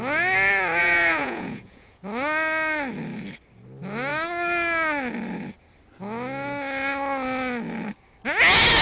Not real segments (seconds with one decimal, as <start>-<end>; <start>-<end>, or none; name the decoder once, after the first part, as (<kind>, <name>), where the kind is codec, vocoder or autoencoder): 0.8-2.0 (vocoder, Vocos)